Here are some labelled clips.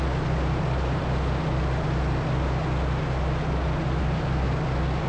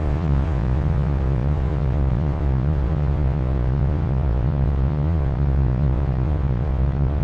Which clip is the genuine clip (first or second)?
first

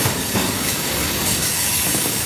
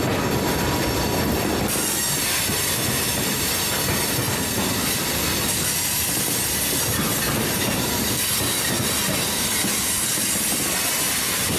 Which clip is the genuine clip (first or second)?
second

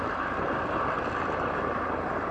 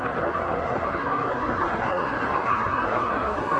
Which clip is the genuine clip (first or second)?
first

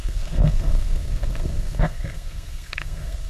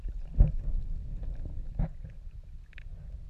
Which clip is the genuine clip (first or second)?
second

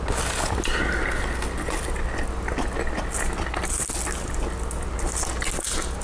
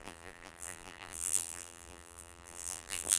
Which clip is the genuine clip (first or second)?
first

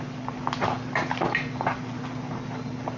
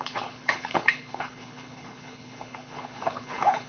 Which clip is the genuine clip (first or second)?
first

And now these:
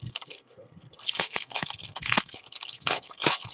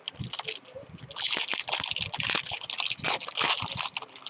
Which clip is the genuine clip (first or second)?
second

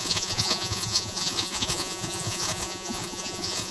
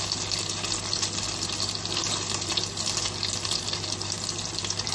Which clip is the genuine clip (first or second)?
second